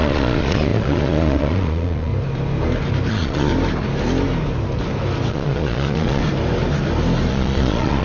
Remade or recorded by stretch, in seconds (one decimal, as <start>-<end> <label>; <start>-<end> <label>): 0.0-2.1 remade; 2.1-3.1 recorded; 3.1-3.5 remade; 3.5-5.3 recorded; 5.3-6.2 remade; 6.2-7.3 recorded; 7.3-8.0 remade